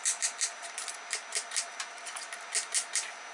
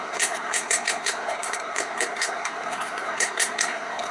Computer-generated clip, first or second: second